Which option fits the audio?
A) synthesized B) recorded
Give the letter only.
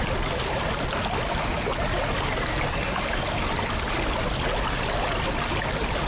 B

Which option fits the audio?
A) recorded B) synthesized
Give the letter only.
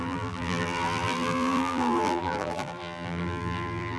B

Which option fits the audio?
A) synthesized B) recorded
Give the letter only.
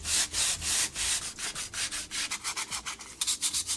B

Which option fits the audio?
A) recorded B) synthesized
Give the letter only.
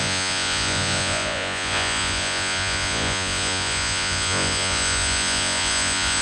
B